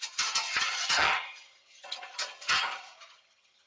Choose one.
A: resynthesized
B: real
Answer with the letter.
A